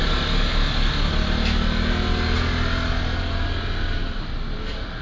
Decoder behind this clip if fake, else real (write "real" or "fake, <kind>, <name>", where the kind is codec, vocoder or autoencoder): real